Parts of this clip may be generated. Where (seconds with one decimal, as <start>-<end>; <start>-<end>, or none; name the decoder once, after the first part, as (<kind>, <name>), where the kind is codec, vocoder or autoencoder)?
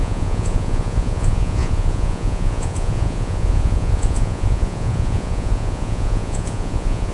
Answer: 0.0-7.1 (vocoder, Vocos)